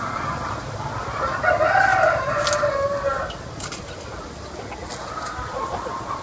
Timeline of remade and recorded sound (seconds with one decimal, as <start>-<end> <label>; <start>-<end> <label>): 0.0-6.2 recorded